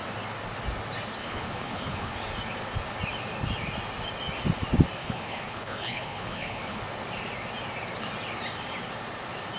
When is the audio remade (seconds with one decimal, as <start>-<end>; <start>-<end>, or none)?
1.2-2.1; 5.0-6.8

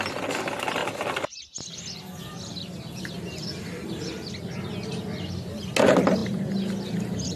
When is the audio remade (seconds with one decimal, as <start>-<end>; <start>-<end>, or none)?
none

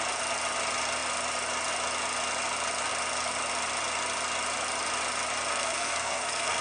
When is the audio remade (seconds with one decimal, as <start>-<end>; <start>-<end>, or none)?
5.5-6.6

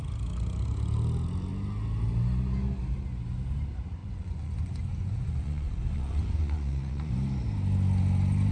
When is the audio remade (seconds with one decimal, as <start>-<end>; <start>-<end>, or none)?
4.0-7.1

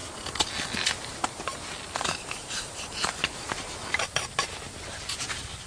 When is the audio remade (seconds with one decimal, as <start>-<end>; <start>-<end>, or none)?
2.4-3.2

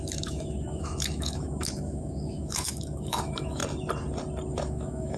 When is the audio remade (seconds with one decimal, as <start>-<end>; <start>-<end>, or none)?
0.0-3.6; 4.5-5.2

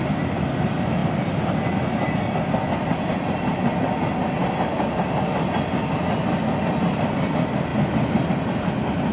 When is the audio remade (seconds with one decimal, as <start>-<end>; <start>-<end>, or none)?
1.0-2.2

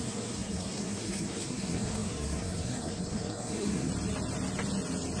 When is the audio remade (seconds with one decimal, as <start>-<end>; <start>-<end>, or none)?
0.0-3.9